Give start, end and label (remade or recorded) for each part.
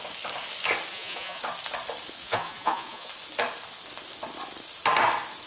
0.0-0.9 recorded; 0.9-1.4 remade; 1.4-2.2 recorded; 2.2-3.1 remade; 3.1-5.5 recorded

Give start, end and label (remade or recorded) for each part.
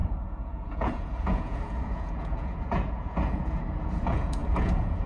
0.0-5.1 remade